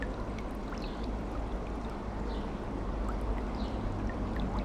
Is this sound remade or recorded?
recorded